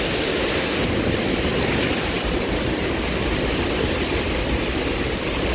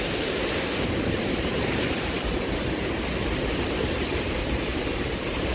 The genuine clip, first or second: first